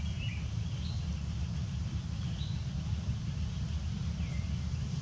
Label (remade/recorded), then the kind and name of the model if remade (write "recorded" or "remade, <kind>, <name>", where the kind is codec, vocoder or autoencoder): remade, vocoder, BigVGAN v2